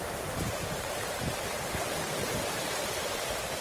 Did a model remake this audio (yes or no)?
yes